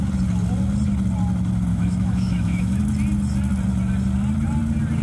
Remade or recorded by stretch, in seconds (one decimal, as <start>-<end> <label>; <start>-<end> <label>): 0.0-1.7 recorded; 1.7-2.8 remade; 2.8-5.0 recorded